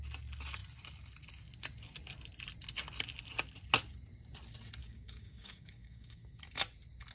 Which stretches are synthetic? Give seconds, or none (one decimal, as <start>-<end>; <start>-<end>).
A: 4.8-6.4